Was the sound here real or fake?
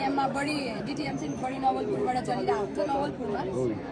fake